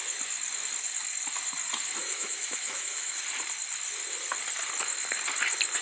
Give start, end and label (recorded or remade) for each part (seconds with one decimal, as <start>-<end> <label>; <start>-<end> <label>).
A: 0.0-2.0 recorded; 2.0-3.2 remade; 3.2-5.8 recorded

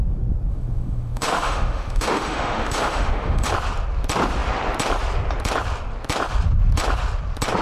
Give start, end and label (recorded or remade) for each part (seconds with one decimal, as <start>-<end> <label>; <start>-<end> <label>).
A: 0.0-0.5 recorded; 0.5-3.5 remade; 3.5-7.6 recorded

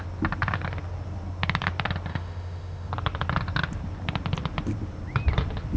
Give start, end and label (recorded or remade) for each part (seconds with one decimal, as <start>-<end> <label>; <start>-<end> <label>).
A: 0.0-2.1 recorded; 2.1-2.9 remade; 2.9-5.8 recorded

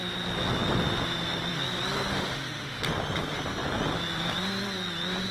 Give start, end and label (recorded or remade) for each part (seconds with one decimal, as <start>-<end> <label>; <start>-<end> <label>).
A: 0.0-2.1 recorded; 2.1-2.8 remade; 2.8-5.3 recorded

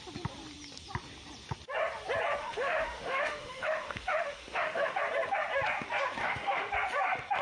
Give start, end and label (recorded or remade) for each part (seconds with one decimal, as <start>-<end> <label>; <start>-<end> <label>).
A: 0.0-2.4 recorded; 2.4-5.0 remade; 5.0-6.2 recorded; 6.2-6.7 remade; 6.7-7.4 recorded